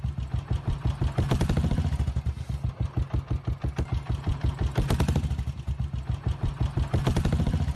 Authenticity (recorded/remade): recorded